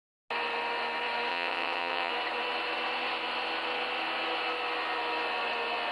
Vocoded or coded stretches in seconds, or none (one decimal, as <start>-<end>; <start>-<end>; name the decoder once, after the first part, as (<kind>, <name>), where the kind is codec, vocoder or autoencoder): 1.3-2.1 (vocoder, WaveNeXt)